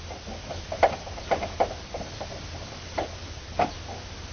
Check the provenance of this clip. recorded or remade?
recorded